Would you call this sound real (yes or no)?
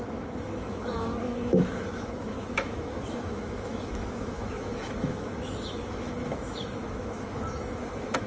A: no